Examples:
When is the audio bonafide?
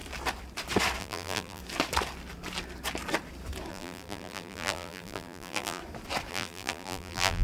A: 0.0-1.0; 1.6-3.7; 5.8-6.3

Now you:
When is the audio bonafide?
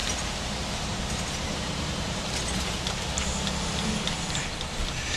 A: 3.1-5.2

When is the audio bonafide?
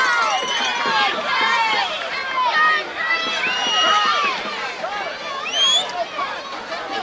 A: 0.0-0.8; 2.1-2.9; 4.8-7.0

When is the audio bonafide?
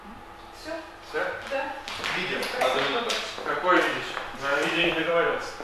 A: 0.0-4.5; 5.1-5.6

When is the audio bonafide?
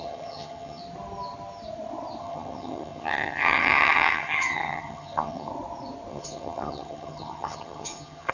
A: 0.8-2.2; 5.5-6.1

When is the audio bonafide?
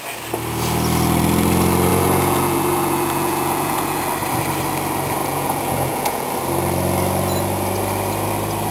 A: 0.0-1.9; 4.0-5.2; 6.3-8.7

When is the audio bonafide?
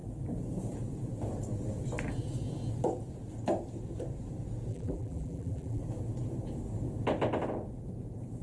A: 0.0-4.7; 5.8-8.4